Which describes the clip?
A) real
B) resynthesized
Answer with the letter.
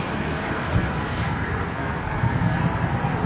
B